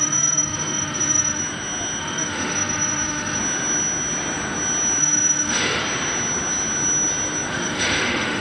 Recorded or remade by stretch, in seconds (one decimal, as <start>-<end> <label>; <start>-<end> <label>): 0.0-1.4 remade; 1.4-2.0 recorded; 2.0-3.4 remade; 3.4-5.0 recorded; 5.0-5.8 remade; 5.8-7.5 recorded; 7.5-8.4 remade